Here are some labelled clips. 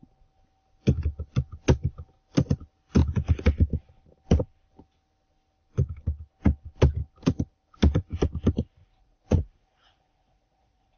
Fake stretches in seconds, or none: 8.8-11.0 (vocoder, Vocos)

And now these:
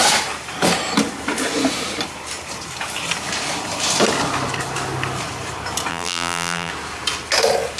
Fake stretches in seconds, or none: 5.9-6.7 (vocoder, BigVGAN v2)

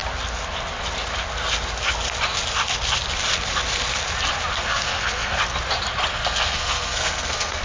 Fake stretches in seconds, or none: 4.5-5.4 (codec, SNAC); 6.1-7.6

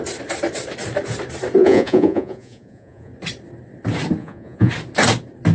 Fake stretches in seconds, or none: 1.6-3.1 (vocoder, Vocos); 4.2-4.7

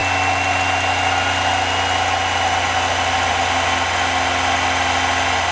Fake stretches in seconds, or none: none